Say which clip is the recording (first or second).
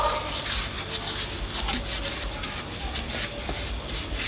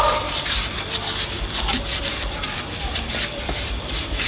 first